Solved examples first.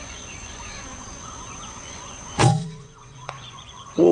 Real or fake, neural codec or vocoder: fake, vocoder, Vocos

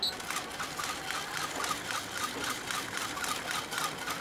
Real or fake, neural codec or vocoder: real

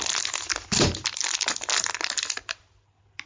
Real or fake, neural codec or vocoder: real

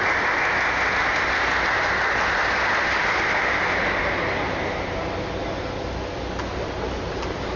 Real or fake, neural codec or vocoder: real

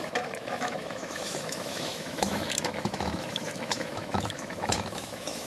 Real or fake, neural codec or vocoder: fake, autoencoder, DAC-VAE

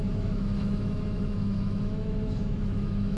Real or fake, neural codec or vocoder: fake, autoencoder, DAC-VAE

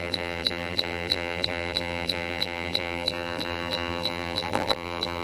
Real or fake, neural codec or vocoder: fake, vocoder, BigVGAN v2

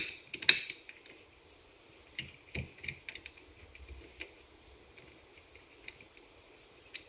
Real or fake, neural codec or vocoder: real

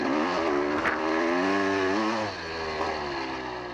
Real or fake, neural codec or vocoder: real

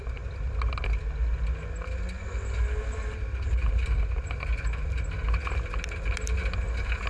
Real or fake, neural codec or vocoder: real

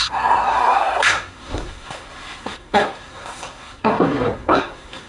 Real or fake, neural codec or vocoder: fake, codec, SNAC